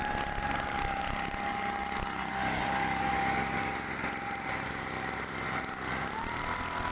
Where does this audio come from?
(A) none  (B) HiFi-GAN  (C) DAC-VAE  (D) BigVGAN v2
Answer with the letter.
A